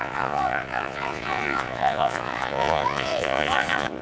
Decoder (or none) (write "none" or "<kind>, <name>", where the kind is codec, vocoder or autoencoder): vocoder, Vocos